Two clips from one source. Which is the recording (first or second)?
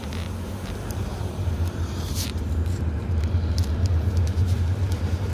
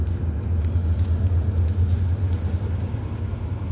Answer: second